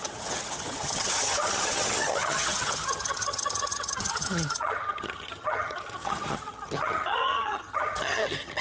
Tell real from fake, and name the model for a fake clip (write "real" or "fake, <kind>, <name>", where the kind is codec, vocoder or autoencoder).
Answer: fake, vocoder, HiFi-GAN